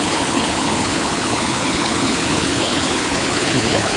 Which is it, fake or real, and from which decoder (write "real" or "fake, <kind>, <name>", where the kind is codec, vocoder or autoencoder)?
fake, codec, HILCodec